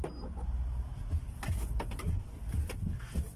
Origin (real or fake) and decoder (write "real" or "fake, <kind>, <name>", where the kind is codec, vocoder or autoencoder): real